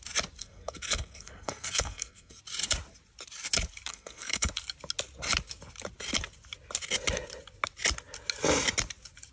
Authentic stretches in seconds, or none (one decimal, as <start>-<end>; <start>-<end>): 0.0-0.4; 2.4-3.9; 4.5-9.3